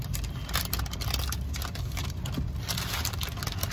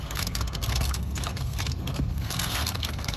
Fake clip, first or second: second